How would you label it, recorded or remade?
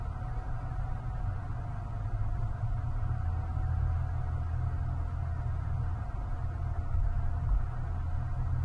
recorded